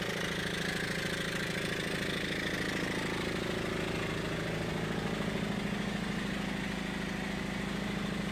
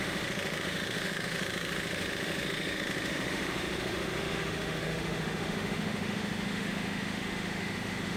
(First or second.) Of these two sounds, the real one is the first